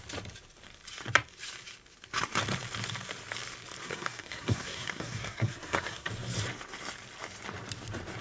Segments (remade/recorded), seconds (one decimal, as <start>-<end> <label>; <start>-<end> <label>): 0.0-3.8 recorded; 3.8-6.1 remade; 6.1-8.2 recorded